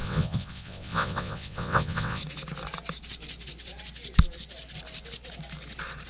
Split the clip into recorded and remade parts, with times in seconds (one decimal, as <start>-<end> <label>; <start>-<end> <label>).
0.0-2.2 remade; 2.2-6.1 recorded